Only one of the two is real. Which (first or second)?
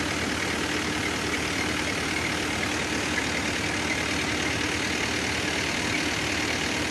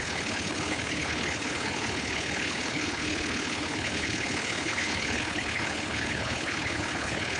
first